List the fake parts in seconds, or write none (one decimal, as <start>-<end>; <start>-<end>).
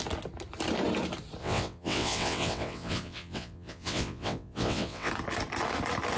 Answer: 1.4-5.1